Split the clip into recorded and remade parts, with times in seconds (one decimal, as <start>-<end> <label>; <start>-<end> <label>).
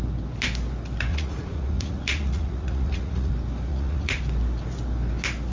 0.0-1.1 recorded; 1.1-3.3 remade; 3.3-3.7 recorded; 3.7-4.2 remade; 4.2-5.5 recorded